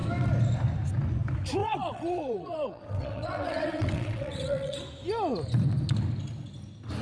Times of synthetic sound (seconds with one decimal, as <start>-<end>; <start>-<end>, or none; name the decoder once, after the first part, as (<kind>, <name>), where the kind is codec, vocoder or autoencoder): 1.6-4.8 (vocoder, WaveNeXt)